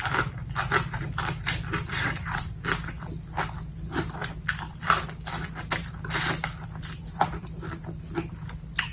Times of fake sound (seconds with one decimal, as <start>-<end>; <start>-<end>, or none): 1.9-2.5